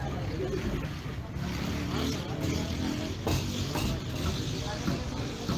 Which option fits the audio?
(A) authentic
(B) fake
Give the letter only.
A